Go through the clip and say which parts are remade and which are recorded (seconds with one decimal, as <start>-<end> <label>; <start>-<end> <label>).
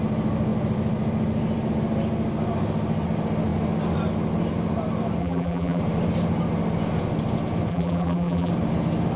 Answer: 0.0-5.2 recorded; 5.2-5.8 remade; 5.8-7.7 recorded; 7.7-8.5 remade; 8.5-9.2 recorded